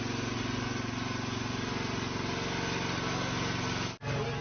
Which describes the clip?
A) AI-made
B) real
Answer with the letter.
B